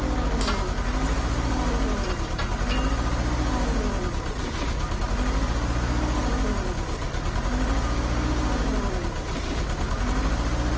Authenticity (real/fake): real